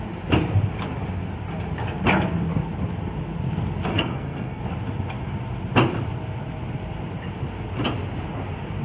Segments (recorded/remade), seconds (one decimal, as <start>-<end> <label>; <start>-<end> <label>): 0.0-3.9 recorded; 3.9-4.6 remade; 4.6-8.8 recorded